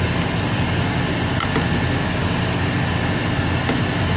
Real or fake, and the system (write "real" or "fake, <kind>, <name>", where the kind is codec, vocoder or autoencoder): real